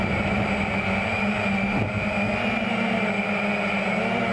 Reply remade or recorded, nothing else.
recorded